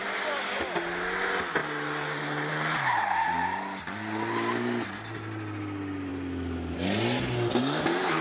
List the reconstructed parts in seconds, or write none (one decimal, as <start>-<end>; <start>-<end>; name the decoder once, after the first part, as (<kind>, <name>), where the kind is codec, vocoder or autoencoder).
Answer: none

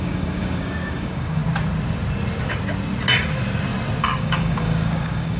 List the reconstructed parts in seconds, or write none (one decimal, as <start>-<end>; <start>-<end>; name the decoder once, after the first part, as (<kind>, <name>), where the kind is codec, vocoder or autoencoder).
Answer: 0.0-1.4 (codec, DAC); 4.0-5.4

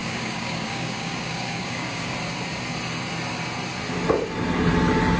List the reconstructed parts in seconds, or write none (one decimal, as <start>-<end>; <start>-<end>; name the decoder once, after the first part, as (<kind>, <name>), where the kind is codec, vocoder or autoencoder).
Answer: 0.0-2.1 (codec, DAC)